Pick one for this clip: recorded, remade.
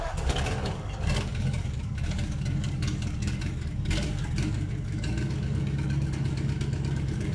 remade